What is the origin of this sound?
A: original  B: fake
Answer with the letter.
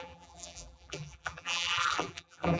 B